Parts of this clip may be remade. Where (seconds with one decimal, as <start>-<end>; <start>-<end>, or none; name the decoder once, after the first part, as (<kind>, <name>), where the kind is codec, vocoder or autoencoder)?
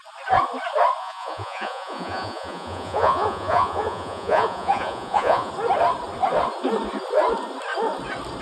1.0-5.5 (vocoder, Vocos)